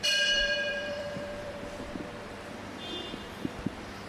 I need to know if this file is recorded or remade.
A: remade